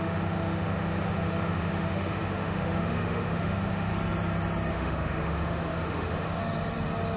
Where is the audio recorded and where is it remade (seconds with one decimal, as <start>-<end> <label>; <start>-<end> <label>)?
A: 0.0-3.9 remade; 3.9-4.7 recorded; 4.7-6.4 remade; 6.4-7.2 recorded

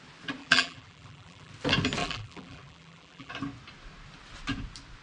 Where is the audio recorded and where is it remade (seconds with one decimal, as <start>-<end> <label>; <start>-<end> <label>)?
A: 0.0-0.4 recorded; 0.4-1.5 remade; 1.5-2.0 recorded; 2.0-3.3 remade; 3.3-5.0 recorded

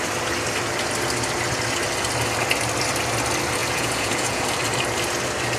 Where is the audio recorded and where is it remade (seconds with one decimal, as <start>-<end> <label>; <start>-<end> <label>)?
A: 0.0-3.6 recorded; 3.6-4.4 remade; 4.4-5.6 recorded

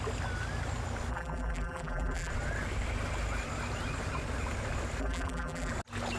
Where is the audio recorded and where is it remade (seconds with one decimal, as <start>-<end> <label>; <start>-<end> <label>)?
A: 0.0-1.1 recorded; 1.1-2.3 remade; 2.3-5.0 recorded; 5.0-5.7 remade; 5.7-6.2 recorded